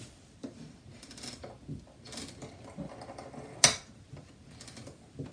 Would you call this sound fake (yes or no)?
no